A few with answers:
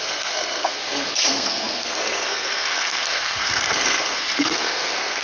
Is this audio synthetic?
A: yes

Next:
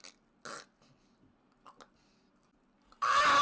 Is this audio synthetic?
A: no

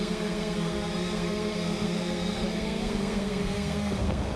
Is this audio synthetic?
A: yes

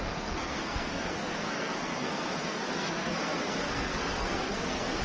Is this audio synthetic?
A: yes